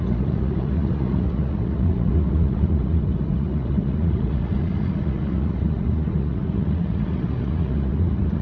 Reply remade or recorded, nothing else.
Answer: remade